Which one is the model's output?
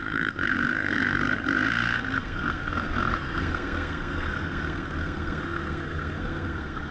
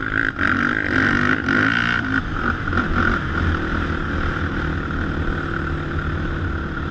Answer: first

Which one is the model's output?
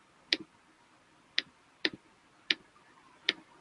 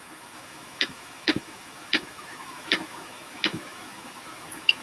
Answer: second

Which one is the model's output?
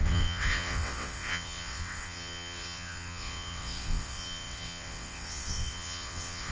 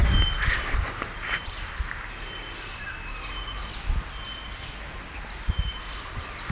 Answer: first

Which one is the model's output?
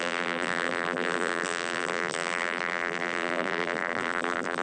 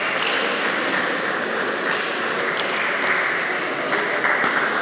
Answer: first